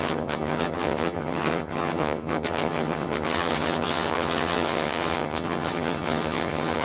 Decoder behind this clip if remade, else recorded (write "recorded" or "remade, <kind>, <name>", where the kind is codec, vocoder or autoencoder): remade, vocoder, HiFi-GAN